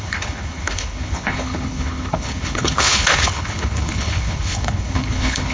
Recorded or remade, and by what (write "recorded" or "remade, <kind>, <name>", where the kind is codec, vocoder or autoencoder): remade, codec, HILCodec